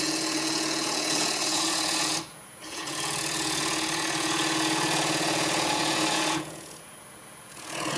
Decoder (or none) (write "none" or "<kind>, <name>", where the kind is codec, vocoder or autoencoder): vocoder, Vocos